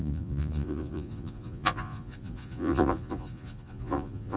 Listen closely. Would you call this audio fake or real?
fake